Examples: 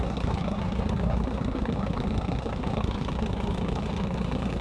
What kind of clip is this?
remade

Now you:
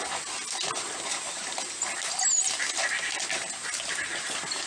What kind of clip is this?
recorded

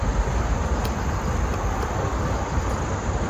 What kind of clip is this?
recorded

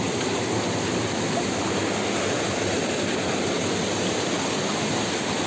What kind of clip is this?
recorded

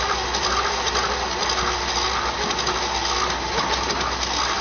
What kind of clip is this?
recorded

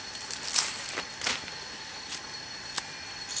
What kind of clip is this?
recorded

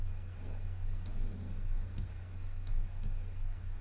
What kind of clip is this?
remade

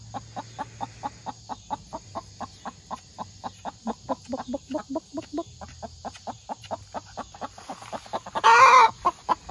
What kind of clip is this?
recorded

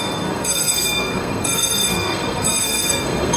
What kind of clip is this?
remade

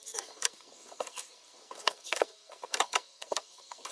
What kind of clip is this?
remade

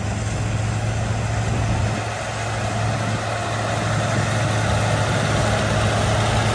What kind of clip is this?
recorded